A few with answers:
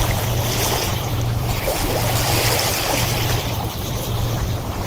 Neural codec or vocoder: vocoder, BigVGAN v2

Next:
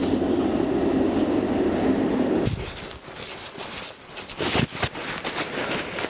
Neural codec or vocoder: none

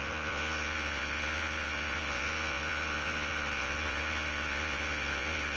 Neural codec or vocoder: vocoder, Vocos